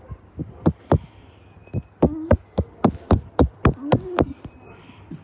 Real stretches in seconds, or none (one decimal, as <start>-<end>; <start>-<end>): 0.0-5.2

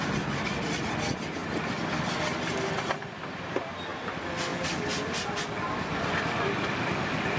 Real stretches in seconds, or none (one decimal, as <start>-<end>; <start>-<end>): 0.0-7.4

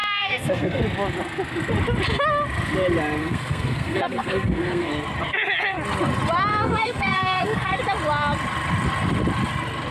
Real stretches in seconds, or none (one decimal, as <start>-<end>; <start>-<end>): 0.8-3.2; 4.9-6.5; 7.8-9.9

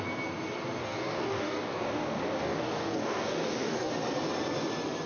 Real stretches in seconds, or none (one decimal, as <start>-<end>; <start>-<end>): 0.0-0.8; 3.9-5.1

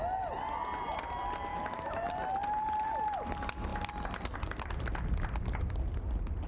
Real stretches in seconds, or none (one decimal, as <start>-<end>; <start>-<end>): 0.0-1.5; 2.1-6.5

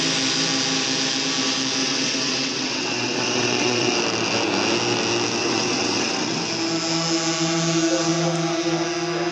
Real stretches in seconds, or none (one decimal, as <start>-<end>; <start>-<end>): 0.0-1.8; 3.9-5.4; 6.4-9.3

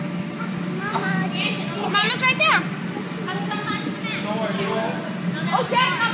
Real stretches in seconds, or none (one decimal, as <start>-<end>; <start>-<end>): 0.0-6.1

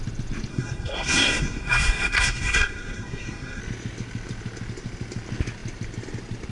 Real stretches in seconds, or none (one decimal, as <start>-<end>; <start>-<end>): 0.0-0.5; 3.6-6.5